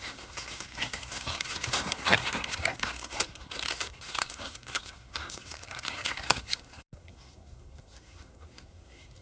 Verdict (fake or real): fake